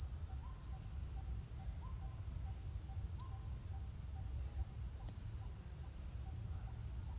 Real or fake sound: real